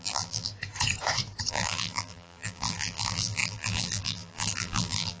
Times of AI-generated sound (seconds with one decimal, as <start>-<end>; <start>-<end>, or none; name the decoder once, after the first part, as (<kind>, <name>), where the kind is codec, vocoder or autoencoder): 0.0-0.5 (vocoder, BigVGAN v2); 1.5-5.2